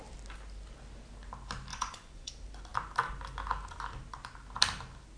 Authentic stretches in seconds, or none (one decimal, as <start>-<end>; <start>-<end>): 0.0-1.7; 2.3-5.2